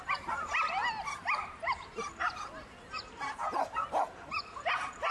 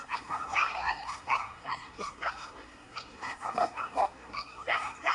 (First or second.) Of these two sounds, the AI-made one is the second